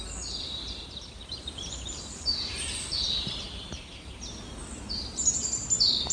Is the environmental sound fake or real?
fake